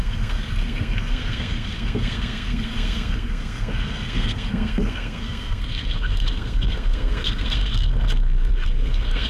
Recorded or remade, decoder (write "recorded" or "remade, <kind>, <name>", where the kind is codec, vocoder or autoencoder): remade, codec, SNAC